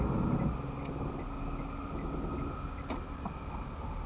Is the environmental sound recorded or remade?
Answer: recorded